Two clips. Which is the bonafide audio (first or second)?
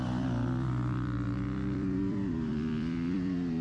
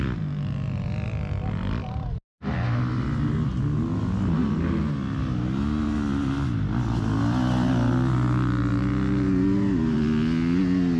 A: second